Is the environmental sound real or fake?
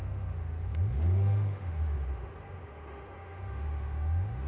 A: fake